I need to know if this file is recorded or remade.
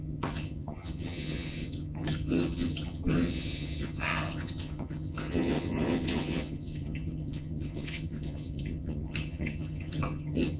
remade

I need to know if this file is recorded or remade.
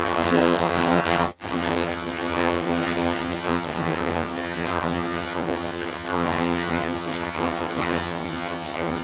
remade